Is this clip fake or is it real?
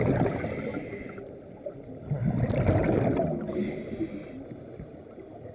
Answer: real